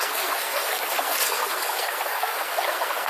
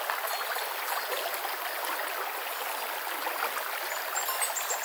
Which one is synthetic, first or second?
first